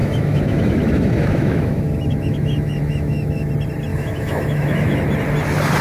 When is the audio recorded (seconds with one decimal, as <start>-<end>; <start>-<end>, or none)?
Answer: 3.5-3.9; 5.0-5.8

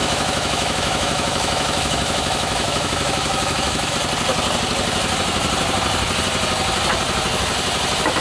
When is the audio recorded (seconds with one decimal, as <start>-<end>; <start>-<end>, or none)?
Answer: 3.9-8.2

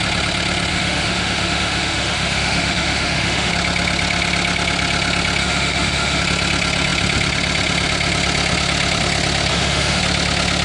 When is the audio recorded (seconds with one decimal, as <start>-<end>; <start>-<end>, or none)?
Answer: 0.0-0.7; 3.5-5.4; 6.2-9.5; 10.0-10.6

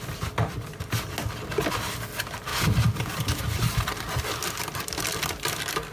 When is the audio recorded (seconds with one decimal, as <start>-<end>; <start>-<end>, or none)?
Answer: 0.0-5.9